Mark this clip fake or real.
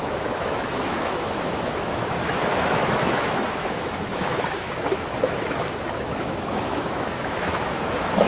fake